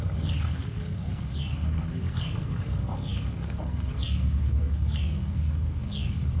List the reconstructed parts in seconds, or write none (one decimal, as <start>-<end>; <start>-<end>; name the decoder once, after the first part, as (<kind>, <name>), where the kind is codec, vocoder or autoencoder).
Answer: 0.0-6.4 (codec, SNAC)